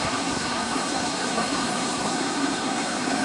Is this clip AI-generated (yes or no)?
yes